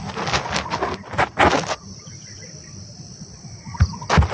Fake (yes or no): no